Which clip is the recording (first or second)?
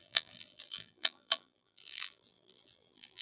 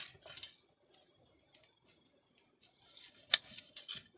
second